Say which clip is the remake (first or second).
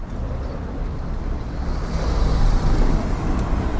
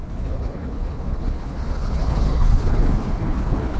second